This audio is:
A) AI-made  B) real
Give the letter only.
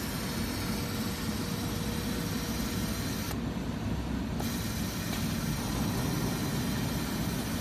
B